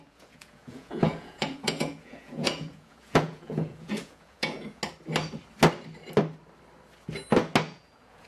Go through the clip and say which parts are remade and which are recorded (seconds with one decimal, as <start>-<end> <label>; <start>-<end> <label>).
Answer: 0.0-4.8 remade; 4.8-7.7 recorded; 7.7-8.3 remade